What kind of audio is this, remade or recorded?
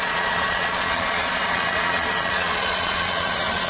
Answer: remade